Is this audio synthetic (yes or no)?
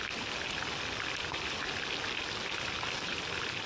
no